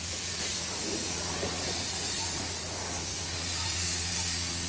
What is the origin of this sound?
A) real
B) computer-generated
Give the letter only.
B